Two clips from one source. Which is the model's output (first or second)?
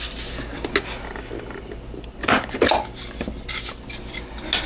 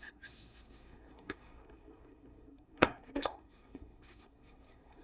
second